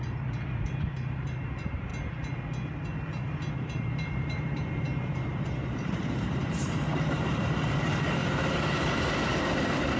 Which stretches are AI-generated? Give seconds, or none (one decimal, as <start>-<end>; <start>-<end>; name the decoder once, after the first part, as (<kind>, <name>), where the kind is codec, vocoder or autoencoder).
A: 0.0-1.9 (vocoder, BigVGAN v2); 3.5-10.0